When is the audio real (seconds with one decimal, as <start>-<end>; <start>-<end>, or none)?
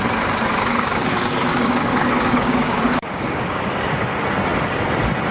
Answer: 0.0-0.5; 3.7-5.3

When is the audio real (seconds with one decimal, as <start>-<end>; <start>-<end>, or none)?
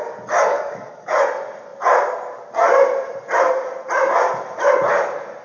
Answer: 0.0-0.5; 1.2-5.4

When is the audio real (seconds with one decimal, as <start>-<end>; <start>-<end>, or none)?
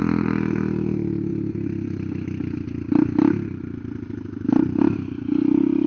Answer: 0.0-5.9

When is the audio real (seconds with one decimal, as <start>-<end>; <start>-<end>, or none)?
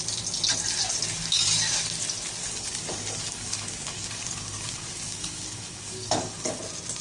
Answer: 0.0-2.4; 6.6-7.0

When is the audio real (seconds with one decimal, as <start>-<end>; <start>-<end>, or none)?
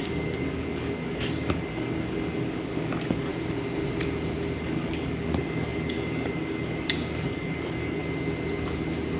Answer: 3.3-4.6; 8.0-9.2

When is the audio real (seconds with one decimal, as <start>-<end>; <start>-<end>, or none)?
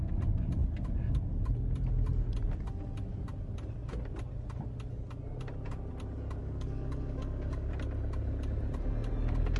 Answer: 0.0-6.4; 7.7-9.6